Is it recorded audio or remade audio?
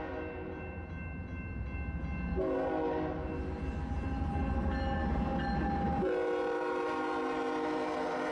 recorded